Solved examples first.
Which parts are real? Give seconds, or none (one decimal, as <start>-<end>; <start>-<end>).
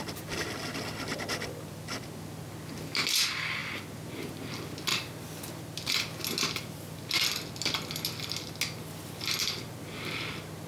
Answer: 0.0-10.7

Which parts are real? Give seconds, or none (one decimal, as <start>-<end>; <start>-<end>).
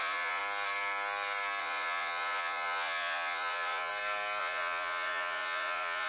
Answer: 0.4-1.6; 3.9-4.4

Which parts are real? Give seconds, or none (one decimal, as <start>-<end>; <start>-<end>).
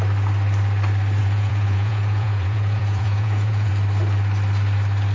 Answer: 0.0-1.2; 3.7-5.1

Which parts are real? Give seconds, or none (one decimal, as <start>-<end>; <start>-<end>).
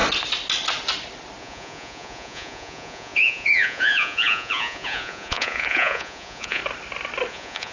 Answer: 0.0-1.4; 6.6-7.3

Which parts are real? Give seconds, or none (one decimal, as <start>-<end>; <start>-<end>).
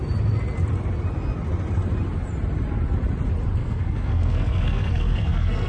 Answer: 0.0-3.6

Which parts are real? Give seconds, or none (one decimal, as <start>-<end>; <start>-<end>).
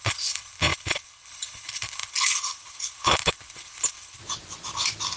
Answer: 4.2-5.2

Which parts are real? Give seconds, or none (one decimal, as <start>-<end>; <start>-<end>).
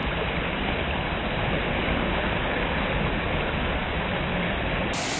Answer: 0.0-5.2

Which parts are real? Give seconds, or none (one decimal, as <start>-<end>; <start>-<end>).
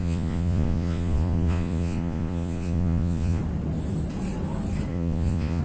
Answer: 3.4-4.9